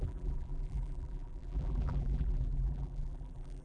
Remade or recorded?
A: remade